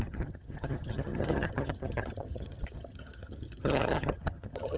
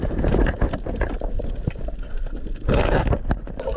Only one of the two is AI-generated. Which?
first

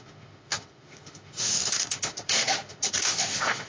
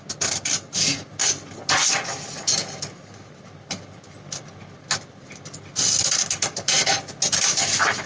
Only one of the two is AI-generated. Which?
first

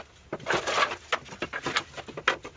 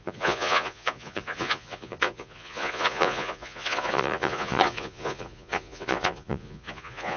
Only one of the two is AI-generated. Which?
second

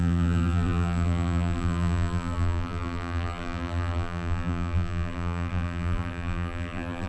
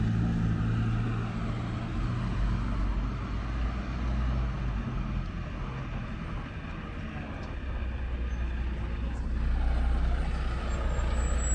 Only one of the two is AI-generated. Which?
first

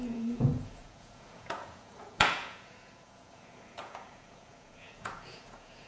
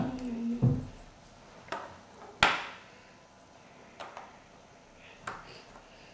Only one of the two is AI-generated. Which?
first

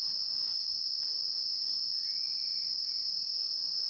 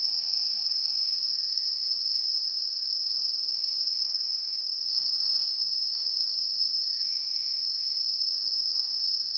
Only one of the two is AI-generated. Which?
second